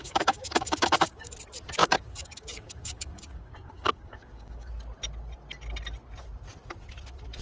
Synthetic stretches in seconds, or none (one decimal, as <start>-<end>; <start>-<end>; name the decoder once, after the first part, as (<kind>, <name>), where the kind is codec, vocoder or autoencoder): 0.0-1.3 (codec, DAC); 1.8-4.7